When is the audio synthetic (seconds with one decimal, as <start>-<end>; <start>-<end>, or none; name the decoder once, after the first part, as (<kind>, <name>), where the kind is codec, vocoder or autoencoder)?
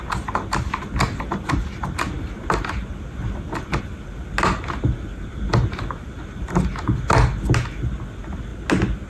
none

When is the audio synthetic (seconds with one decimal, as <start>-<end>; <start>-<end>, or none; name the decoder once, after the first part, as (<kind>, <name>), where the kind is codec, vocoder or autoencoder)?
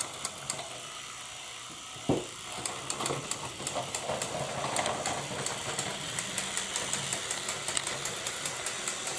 none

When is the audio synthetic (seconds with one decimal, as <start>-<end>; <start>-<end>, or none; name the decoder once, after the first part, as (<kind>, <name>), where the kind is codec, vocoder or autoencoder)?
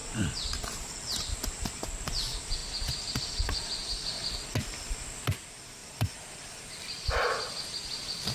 2.6-3.2 (vocoder, BigVGAN v2); 5.8-6.5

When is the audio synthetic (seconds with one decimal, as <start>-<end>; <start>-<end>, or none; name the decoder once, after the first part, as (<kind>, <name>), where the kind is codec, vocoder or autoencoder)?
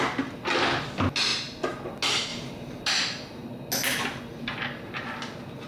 2.3-2.9 (vocoder, BigVGAN v2)